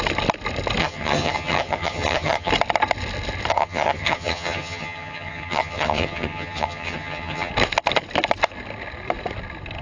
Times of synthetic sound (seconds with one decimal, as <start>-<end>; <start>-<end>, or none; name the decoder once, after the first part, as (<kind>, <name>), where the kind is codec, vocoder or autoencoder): 0.8-2.5 (vocoder, HiFi-GAN); 3.5-7.5